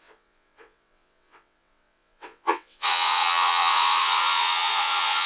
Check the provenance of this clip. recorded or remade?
remade